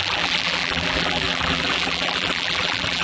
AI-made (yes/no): yes